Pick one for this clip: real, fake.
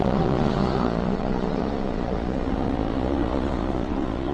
fake